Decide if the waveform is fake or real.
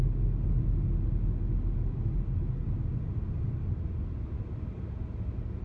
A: real